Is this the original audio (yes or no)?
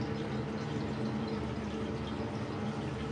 yes